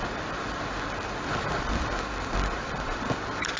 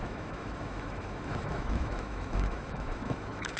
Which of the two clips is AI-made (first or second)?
second